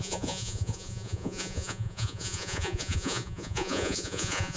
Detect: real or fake fake